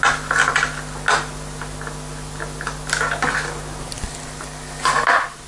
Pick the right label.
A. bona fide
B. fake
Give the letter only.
A